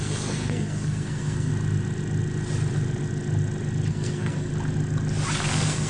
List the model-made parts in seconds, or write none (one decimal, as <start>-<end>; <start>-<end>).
0.0-1.5; 3.9-4.5; 5.5-5.9